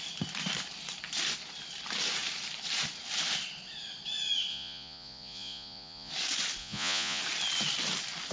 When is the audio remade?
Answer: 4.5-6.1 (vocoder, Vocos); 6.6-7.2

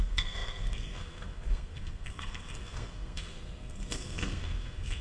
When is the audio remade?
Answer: 0.0-5.0 (codec, SNAC)